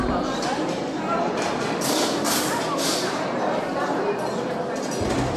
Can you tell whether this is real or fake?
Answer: real